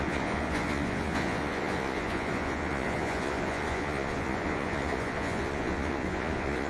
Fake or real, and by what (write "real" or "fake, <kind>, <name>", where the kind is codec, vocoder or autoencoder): fake, vocoder, Vocos